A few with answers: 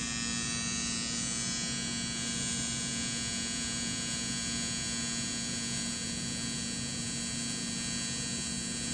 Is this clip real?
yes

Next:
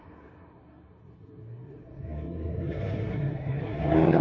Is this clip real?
no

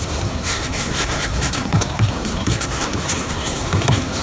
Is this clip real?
no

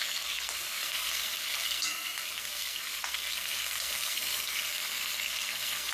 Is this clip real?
no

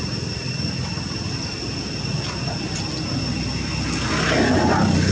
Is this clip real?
yes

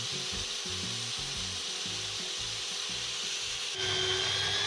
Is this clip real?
yes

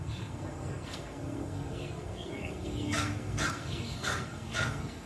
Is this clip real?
no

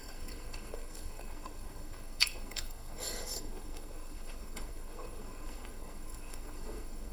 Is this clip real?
no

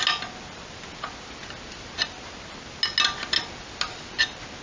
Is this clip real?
yes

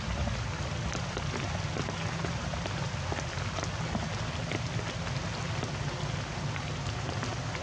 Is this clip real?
yes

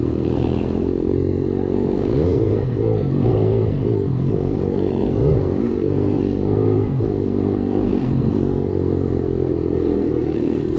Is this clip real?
no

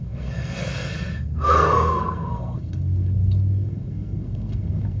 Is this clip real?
no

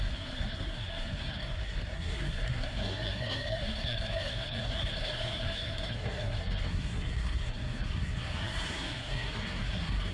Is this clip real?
no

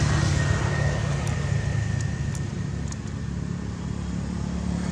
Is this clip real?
yes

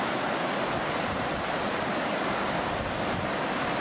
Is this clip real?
yes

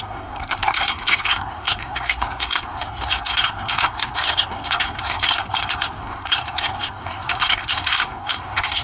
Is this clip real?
no